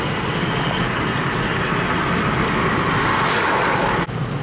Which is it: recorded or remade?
recorded